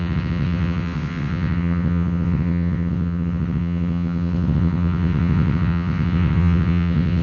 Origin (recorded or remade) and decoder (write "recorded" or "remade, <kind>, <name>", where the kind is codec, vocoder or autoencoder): remade, vocoder, WaveNeXt